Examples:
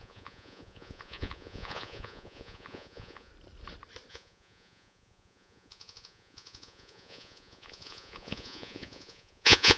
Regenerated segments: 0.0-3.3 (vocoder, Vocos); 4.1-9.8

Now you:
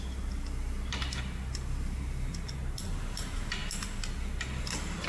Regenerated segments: none

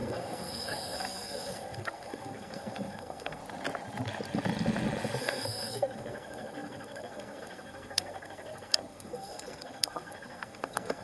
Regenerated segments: 0.0-3.4 (codec, SNAC); 5.2-11.0

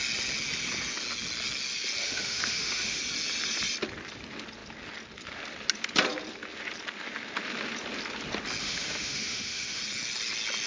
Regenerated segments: 2.0-3.0 (autoencoder, DAC-VAE); 8.6-9.8

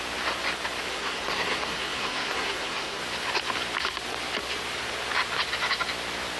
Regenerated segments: 0.9-3.0 (codec, SNAC)

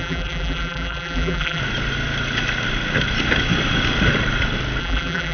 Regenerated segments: 0.0-1.6 (vocoder, BigVGAN v2); 4.8-5.3